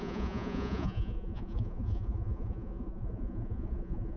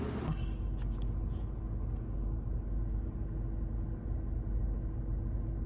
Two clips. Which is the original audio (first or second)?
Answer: second